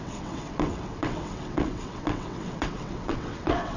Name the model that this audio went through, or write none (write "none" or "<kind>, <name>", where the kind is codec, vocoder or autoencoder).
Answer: vocoder, WaveNeXt